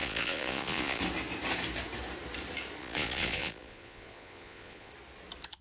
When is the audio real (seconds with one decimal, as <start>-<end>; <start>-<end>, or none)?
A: 1.0-2.8; 4.9-5.6

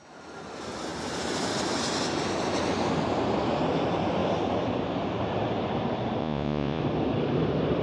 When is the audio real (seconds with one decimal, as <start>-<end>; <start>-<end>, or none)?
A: 0.0-6.2; 6.8-7.8

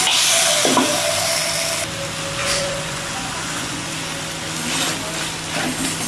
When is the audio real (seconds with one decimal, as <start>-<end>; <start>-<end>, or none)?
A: 0.0-2.4; 3.9-6.1

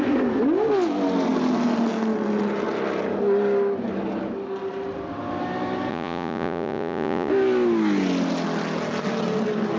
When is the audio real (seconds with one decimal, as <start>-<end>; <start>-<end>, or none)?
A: 0.0-5.9; 7.3-9.8